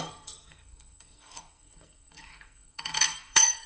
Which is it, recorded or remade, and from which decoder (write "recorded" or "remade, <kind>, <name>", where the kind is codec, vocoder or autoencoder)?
remade, codec, SNAC